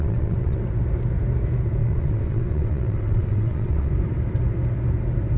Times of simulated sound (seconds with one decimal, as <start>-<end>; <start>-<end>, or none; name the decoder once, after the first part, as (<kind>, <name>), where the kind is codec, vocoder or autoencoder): 0.0-0.6 (vocoder, WaveNeXt); 1.8-3.9